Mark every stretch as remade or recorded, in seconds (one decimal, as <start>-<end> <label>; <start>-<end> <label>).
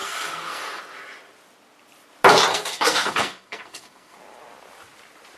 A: 0.0-0.8 remade; 0.8-2.5 recorded; 2.5-4.2 remade; 4.2-5.4 recorded